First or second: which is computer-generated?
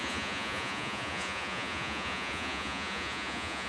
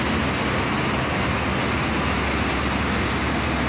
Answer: first